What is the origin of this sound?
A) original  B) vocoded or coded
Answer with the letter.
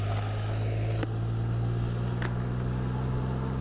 A